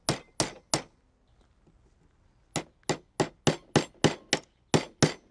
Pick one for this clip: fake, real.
real